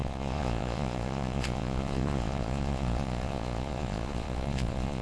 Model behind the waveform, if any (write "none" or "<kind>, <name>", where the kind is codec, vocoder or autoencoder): vocoder, Vocos